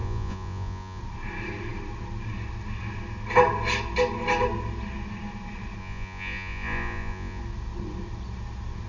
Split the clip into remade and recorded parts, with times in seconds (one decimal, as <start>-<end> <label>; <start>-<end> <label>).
0.0-1.0 remade; 1.0-5.8 recorded; 5.8-7.4 remade; 7.4-8.9 recorded